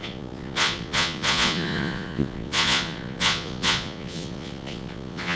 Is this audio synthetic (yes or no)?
yes